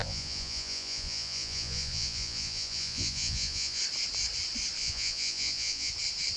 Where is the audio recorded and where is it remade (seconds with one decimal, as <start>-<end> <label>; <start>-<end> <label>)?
0.0-3.8 remade; 3.8-4.8 recorded; 4.8-5.9 remade; 5.9-6.4 recorded